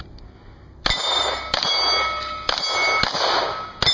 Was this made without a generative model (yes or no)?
yes